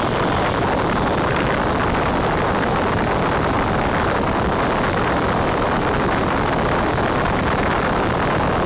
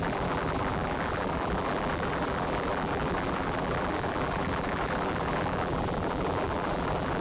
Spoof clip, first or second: second